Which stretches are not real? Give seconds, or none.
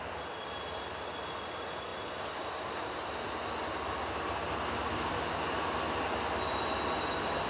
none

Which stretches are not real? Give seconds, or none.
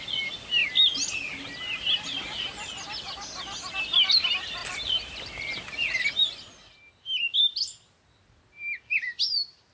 none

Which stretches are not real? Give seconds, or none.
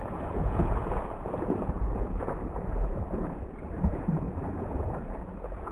0.0-5.7 (vocoder, Vocos)